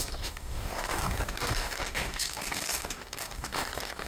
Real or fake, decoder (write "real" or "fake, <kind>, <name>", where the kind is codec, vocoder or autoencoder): fake, codec, DAC